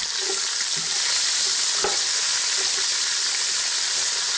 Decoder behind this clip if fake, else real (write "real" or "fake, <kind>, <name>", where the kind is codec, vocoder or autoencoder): real